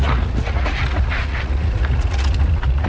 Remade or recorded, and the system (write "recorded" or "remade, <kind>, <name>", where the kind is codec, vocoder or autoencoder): remade, vocoder, Vocos